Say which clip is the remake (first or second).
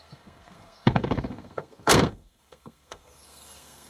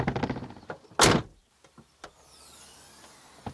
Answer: first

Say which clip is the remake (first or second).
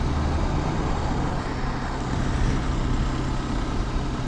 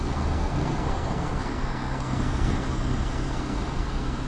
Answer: second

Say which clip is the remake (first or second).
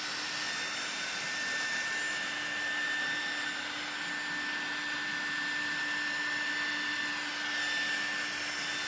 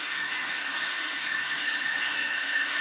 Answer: second